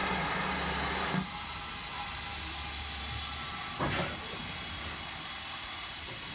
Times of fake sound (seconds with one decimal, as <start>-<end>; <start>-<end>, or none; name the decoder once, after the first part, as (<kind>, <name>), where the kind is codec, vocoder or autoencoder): none